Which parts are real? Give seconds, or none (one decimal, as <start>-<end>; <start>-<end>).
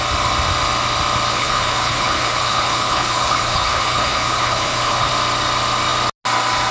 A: 0.0-1.3; 5.1-6.7